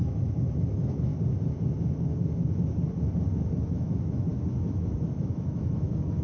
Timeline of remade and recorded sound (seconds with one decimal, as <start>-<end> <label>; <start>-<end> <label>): 0.0-1.1 remade; 1.1-3.5 recorded; 3.5-6.2 remade